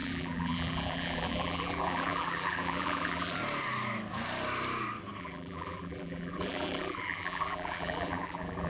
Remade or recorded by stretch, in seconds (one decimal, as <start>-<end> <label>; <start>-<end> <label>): 0.0-3.4 remade; 3.4-5.2 recorded; 5.2-8.7 remade